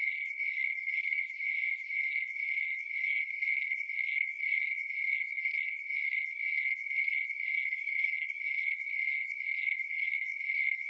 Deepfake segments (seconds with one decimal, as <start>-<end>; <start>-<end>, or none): 0.0-1.2; 2.0-10.9